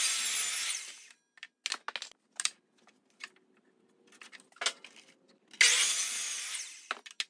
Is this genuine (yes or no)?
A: yes